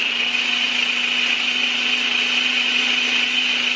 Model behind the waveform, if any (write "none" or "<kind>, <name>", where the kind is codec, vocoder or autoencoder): none